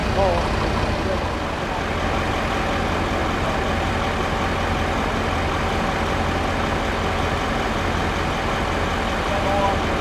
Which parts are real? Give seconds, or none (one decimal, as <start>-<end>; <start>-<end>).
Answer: 0.0-10.0